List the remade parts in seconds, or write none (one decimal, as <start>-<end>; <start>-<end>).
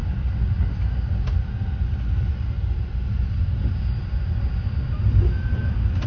none